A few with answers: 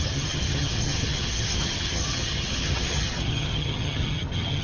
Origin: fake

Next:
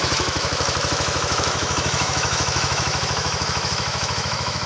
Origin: fake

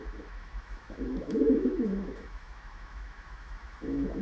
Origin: fake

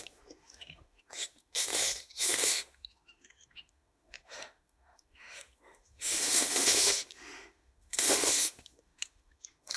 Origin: fake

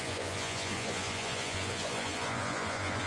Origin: fake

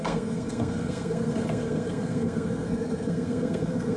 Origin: fake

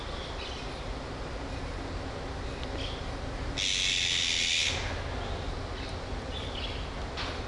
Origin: real